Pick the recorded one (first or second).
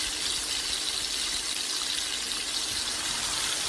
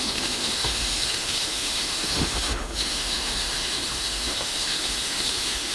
first